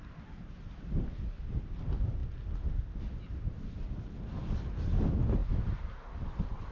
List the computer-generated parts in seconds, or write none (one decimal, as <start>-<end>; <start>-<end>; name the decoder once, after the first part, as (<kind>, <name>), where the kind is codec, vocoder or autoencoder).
none

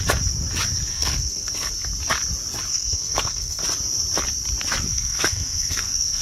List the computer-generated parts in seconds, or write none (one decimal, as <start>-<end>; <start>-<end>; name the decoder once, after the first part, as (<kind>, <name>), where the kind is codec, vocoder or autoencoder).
0.9-1.7 (codec, SNAC); 2.7-3.6; 4.9-6.2

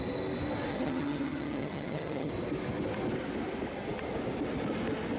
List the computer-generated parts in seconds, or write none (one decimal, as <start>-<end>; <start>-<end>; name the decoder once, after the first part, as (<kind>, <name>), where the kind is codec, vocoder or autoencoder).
0.7-2.3 (vocoder, HiFi-GAN)

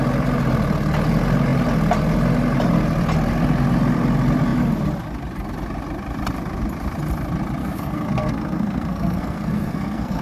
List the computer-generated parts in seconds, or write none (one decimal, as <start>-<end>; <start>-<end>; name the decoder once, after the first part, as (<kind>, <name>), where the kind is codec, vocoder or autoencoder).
7.6-10.2 (codec, SNAC)

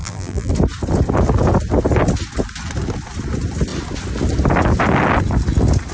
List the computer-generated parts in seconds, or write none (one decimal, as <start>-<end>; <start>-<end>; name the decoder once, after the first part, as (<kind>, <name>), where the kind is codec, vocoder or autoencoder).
0.0-0.5 (vocoder, BigVGAN v2)